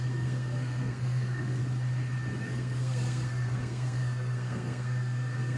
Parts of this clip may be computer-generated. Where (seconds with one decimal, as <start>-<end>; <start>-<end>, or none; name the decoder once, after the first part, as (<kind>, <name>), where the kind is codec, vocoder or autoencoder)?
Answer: 0.0-1.6 (codec, SNAC); 2.4-5.6